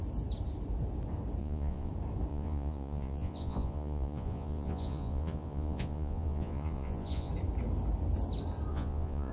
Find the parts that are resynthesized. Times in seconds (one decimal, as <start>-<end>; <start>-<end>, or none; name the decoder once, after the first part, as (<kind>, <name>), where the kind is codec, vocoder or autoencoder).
1.4-1.9 (vocoder, Vocos); 2.3-7.3; 8.7-9.3